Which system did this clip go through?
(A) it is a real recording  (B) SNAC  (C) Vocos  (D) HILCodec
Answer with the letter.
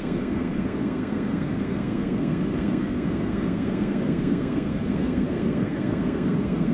B